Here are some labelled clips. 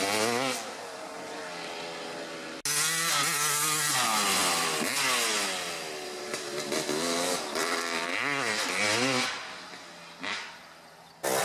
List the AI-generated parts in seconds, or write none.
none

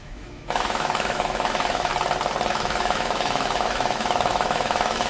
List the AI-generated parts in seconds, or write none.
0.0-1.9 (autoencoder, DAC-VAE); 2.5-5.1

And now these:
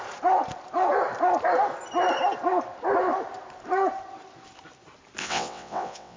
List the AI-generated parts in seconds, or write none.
5.2-6.2 (vocoder, WaveNeXt)